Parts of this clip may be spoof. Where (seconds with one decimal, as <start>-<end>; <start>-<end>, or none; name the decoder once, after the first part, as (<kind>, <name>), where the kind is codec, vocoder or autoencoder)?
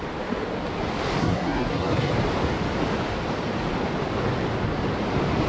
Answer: 1.2-2.1 (codec, SNAC)